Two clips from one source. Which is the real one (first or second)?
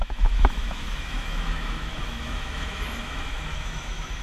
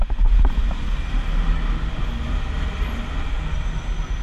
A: second